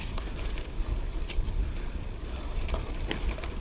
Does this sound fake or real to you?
real